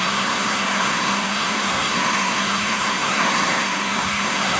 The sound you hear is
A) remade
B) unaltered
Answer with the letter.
A